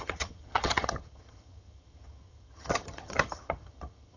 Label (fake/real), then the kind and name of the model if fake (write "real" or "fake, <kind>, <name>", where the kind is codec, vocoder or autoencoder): fake, vocoder, HiFi-GAN